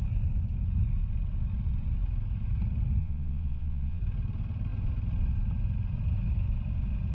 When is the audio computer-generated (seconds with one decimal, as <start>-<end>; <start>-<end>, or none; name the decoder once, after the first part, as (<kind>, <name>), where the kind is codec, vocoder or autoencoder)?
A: 3.0-4.0 (vocoder, Vocos)